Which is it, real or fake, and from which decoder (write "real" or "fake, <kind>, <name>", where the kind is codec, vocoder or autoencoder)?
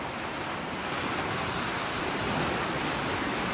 real